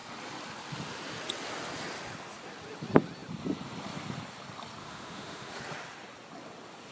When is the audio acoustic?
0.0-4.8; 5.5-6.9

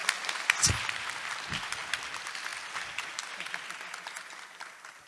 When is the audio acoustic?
0.0-5.1